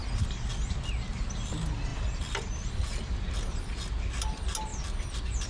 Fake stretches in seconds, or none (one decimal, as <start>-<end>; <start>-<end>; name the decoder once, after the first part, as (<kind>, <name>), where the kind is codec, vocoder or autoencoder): 1.9-3.9 (vocoder, BigVGAN v2)